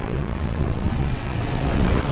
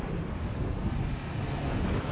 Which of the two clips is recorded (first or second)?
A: second